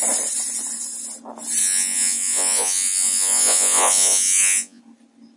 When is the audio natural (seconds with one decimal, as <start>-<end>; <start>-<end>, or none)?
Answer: 0.0-1.6; 4.8-5.4